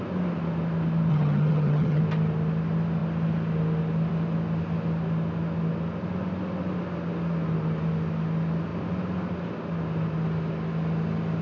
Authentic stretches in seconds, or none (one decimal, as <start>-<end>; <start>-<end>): 0.0-1.1; 2.0-11.4